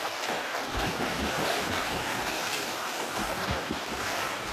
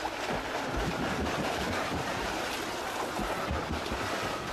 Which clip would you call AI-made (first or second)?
first